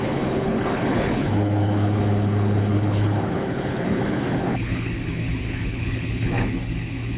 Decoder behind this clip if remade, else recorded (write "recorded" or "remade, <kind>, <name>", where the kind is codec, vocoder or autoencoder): remade, codec, HILCodec